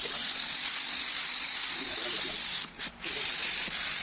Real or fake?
real